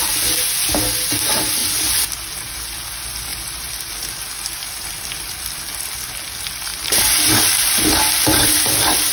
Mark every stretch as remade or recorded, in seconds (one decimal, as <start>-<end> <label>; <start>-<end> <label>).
0.0-3.3 recorded; 3.3-5.9 remade; 5.9-6.7 recorded; 6.7-9.1 remade